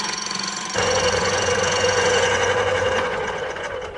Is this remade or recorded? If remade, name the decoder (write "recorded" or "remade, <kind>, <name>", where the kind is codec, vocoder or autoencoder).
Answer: remade, vocoder, Vocos